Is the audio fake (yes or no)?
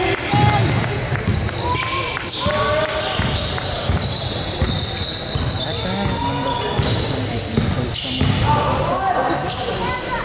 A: no